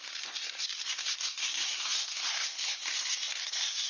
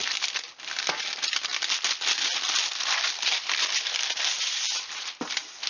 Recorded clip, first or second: second